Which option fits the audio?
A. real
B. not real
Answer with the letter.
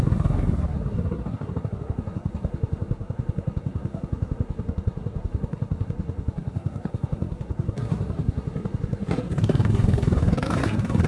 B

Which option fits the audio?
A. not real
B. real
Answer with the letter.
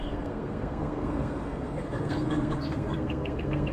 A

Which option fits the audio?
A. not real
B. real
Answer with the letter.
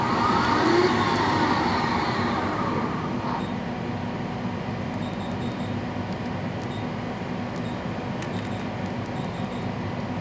B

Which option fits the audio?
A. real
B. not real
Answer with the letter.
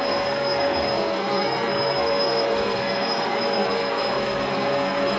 B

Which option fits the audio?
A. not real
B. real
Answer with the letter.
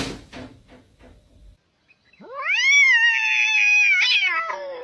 B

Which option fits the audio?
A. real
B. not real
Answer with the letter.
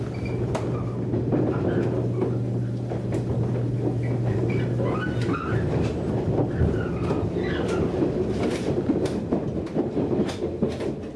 A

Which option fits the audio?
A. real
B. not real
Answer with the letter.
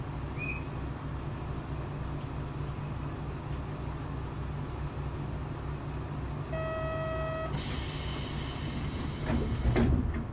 A